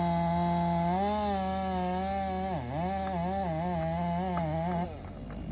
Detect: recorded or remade recorded